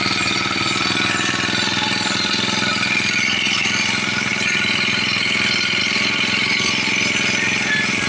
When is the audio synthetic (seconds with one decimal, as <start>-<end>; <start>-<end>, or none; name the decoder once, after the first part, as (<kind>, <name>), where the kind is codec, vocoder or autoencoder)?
none